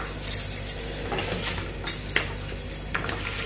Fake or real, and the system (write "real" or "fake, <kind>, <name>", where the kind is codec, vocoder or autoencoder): real